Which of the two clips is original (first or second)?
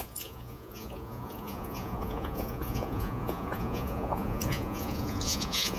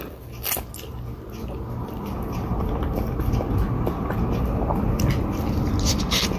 second